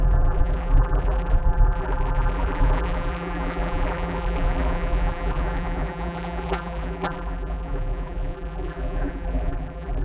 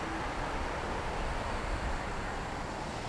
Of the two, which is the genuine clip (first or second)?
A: second